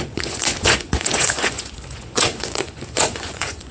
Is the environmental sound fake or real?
fake